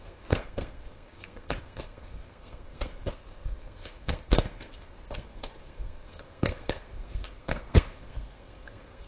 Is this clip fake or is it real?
fake